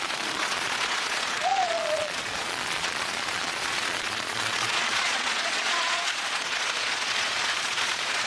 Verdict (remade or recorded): remade